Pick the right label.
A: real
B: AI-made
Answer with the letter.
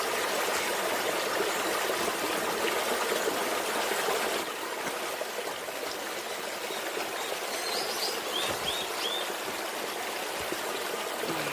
A